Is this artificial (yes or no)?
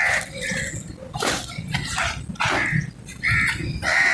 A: no